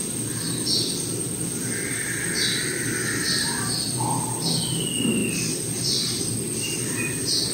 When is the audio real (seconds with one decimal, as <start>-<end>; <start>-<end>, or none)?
0.0-5.2; 6.2-7.5